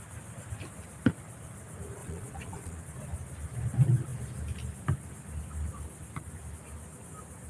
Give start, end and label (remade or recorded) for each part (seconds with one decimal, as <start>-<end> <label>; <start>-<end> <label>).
0.0-2.0 recorded; 2.0-2.8 remade; 2.8-7.5 recorded